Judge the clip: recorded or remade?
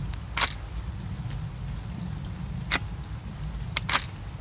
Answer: recorded